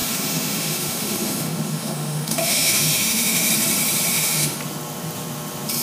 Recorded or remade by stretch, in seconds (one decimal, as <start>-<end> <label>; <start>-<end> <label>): 0.0-3.5 remade; 3.5-4.1 recorded; 4.1-4.6 remade; 4.6-5.8 recorded